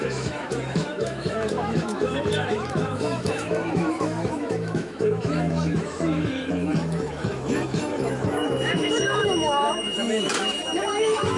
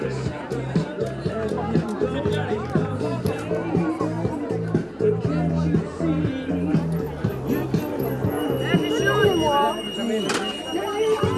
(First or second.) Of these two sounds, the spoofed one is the first